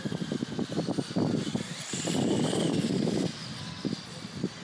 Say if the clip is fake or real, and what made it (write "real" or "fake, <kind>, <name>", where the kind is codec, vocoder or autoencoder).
real